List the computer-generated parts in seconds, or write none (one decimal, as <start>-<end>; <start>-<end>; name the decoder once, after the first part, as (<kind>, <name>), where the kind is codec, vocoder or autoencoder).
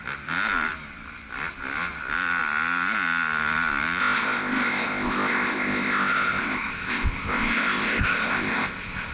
4.0-9.1 (codec, ZipCodec)